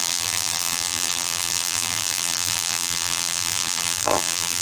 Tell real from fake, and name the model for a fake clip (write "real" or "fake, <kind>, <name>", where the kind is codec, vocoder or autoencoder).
fake, vocoder, BigVGAN v2